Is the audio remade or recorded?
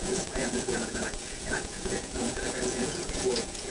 remade